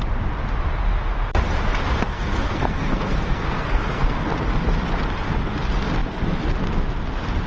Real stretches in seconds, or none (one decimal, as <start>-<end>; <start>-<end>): 0.0-2.1; 4.3-7.5